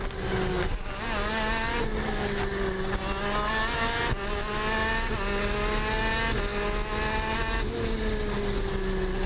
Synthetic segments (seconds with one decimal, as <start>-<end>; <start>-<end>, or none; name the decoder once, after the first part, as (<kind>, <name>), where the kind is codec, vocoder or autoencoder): none